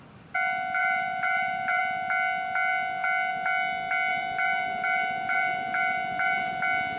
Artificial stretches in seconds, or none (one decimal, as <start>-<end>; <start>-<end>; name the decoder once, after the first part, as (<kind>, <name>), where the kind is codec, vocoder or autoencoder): 0.8-1.8 (vocoder, BigVGAN v2); 4.1-6.5